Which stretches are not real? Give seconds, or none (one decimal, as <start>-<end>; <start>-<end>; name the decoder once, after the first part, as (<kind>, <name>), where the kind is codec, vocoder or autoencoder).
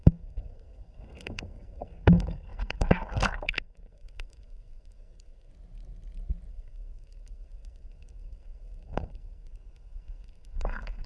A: 0.0-5.5 (codec, SNAC); 6.5-11.1